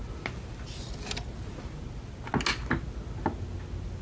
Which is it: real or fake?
real